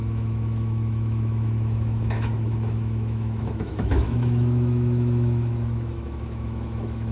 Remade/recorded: remade